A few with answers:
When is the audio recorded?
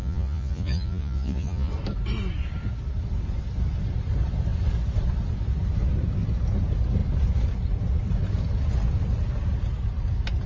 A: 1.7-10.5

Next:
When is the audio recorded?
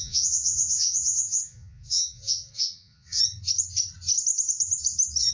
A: 3.2-5.3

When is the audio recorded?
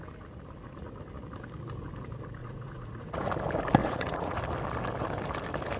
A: 0.0-2.4; 3.3-3.8; 4.4-5.8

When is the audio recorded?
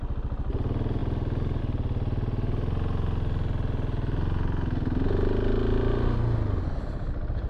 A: 0.0-7.5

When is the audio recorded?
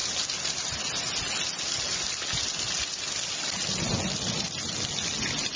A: 0.0-5.6